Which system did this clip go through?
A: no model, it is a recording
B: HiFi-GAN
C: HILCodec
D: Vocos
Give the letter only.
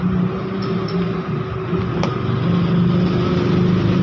A